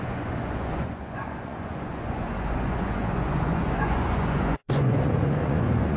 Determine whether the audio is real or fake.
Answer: fake